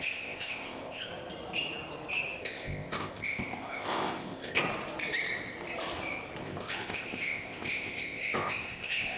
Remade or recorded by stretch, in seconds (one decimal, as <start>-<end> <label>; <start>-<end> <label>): 0.0-1.1 remade; 1.1-2.4 recorded; 2.4-4.6 remade; 4.6-6.4 recorded; 6.4-9.2 remade